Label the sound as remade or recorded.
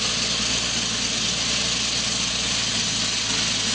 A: recorded